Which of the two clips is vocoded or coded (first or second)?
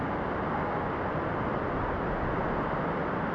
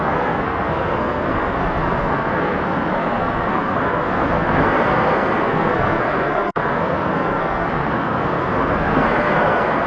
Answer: second